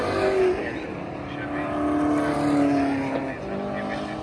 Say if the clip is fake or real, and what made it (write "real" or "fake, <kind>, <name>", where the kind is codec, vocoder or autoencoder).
real